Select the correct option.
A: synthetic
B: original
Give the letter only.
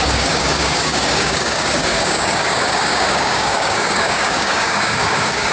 A